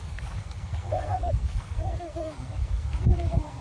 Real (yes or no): no